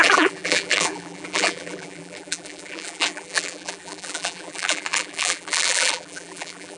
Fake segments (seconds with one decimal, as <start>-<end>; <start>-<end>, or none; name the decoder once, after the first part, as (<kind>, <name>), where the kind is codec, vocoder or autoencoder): 0.0-6.8 (vocoder, BigVGAN v2)